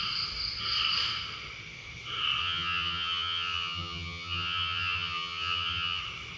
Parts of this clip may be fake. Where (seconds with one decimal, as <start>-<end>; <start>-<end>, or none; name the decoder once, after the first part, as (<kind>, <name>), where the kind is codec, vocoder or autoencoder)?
2.4-6.0 (vocoder, HiFi-GAN)